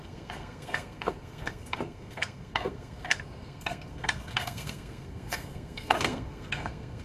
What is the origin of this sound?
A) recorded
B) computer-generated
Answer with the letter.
B